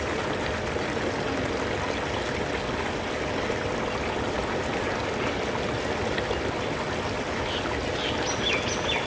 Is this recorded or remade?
recorded